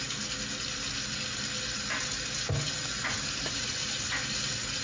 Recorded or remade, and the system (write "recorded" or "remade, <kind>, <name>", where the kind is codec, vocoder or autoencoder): recorded